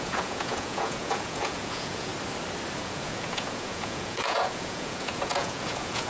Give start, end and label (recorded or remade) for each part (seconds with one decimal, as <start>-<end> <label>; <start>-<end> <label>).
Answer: 0.0-2.1 remade; 2.1-2.8 recorded; 2.8-6.1 remade